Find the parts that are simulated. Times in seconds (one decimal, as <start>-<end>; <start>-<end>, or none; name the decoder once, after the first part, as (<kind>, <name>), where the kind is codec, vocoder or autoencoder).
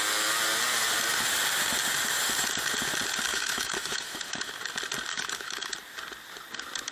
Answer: 3.3-4.5 (autoencoder, DAC-VAE); 5.1-5.7